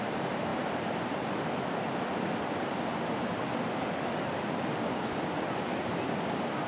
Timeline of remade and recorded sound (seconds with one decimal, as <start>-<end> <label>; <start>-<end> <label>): 0.0-6.7 recorded